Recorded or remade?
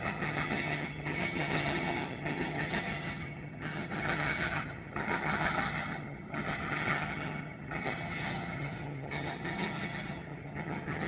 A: remade